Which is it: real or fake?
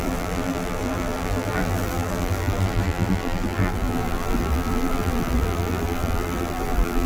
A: fake